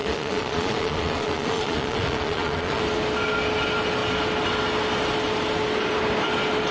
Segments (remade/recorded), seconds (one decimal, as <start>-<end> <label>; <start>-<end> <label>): 0.0-2.8 remade; 2.8-6.7 recorded